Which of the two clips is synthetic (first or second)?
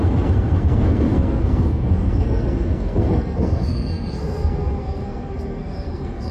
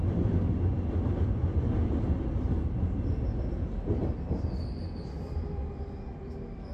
first